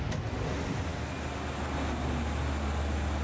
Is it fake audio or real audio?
real